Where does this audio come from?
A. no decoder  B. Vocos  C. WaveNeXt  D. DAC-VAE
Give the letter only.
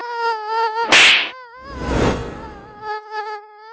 A